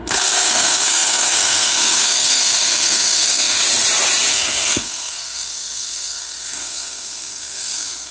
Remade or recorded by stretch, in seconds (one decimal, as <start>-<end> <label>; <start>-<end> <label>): 0.0-3.6 remade; 3.6-4.3 recorded; 4.3-8.1 remade

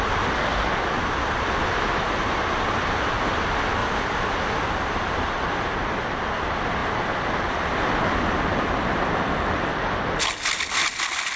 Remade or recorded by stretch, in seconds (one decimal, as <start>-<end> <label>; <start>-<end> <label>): 0.0-3.8 recorded; 3.8-5.4 remade; 5.4-11.4 recorded

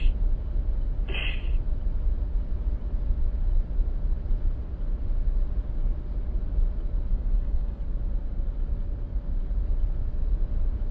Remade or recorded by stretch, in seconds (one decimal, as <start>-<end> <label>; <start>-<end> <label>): 0.0-7.1 recorded; 7.1-7.8 remade; 7.8-10.9 recorded

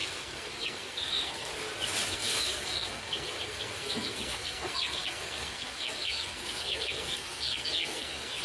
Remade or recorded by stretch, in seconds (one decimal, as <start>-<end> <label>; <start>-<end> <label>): 0.0-1.5 remade; 1.5-2.1 recorded; 2.1-8.4 remade

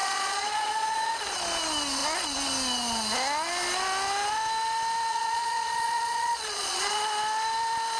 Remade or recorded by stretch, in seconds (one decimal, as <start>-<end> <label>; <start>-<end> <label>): 0.0-1.2 remade; 1.2-5.1 recorded; 5.1-6.9 remade; 6.9-8.0 recorded

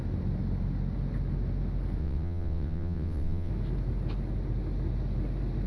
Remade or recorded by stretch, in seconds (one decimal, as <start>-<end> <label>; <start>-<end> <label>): 0.0-2.0 recorded; 2.0-3.5 remade; 3.5-5.7 recorded